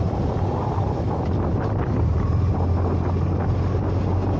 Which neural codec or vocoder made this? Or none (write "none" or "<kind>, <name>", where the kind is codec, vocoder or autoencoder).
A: none